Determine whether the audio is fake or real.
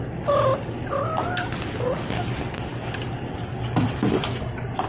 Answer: real